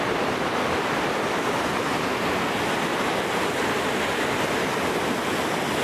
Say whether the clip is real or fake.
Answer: real